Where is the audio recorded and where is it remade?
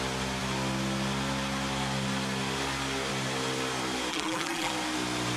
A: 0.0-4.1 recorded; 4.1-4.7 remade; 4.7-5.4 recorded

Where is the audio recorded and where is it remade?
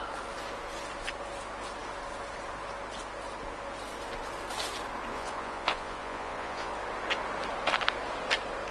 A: 0.0-5.1 recorded; 5.1-6.7 remade; 6.7-8.7 recorded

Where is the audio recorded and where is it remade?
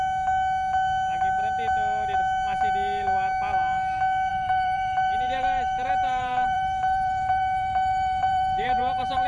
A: 0.0-4.3 recorded; 4.3-9.3 remade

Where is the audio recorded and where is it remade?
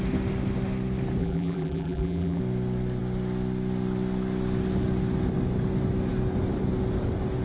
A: 0.0-1.2 recorded; 1.2-2.4 remade; 2.4-7.4 recorded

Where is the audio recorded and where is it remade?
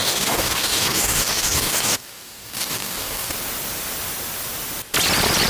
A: 0.0-3.3 remade; 3.3-5.5 recorded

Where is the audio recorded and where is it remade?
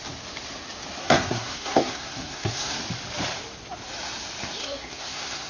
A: 0.0-1.0 recorded; 1.0-2.8 remade; 2.8-4.6 recorded; 4.6-5.5 remade